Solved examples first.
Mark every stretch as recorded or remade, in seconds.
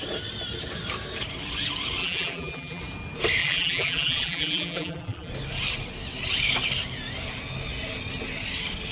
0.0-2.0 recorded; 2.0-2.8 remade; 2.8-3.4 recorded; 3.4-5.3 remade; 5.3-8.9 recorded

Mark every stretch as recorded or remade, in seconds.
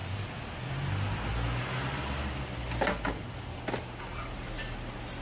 0.0-0.7 recorded; 0.7-1.3 remade; 1.3-4.4 recorded; 4.4-5.2 remade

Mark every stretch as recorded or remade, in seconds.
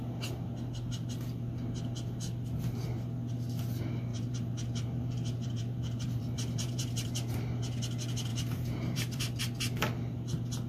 0.0-4.1 recorded; 4.1-7.4 remade; 7.4-8.3 recorded; 8.3-9.4 remade; 9.4-10.7 recorded